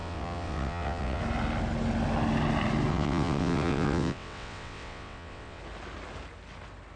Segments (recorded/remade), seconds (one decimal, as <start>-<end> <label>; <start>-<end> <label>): 0.0-1.2 remade; 1.2-2.9 recorded; 2.9-5.6 remade; 5.6-7.0 recorded